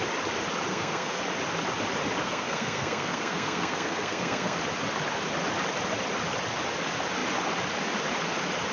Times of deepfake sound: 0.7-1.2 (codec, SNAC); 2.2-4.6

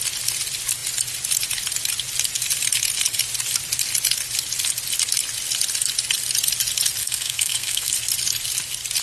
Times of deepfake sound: 7.0-7.9 (codec, SNAC)